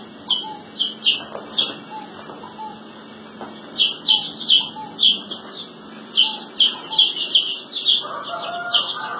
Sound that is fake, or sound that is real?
real